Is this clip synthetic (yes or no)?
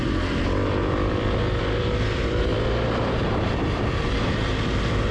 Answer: yes